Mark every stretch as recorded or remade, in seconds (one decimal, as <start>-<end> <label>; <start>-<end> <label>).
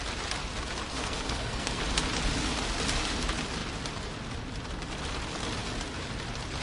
0.0-0.9 recorded; 0.9-1.8 remade; 1.8-6.6 recorded